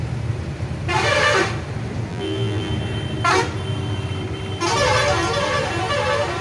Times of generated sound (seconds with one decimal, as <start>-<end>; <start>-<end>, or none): 2.1-2.7